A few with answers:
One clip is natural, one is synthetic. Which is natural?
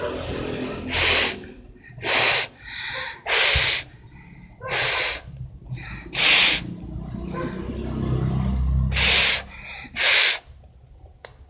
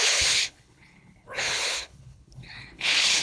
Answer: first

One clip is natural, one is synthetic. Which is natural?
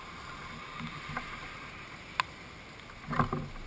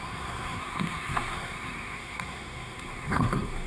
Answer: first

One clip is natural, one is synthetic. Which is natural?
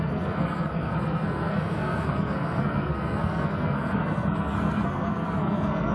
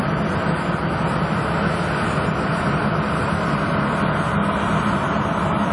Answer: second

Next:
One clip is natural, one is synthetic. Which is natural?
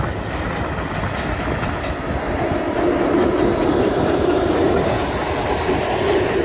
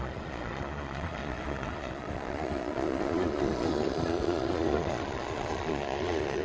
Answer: first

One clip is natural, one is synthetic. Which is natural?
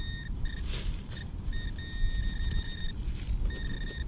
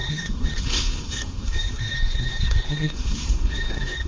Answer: first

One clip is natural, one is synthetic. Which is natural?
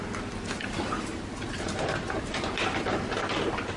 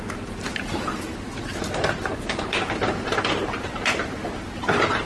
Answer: first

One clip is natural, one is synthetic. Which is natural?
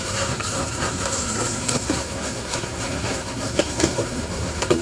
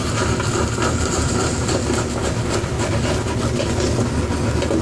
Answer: second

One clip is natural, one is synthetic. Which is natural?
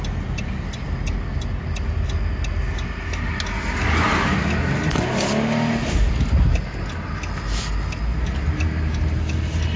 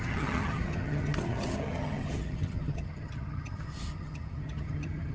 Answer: first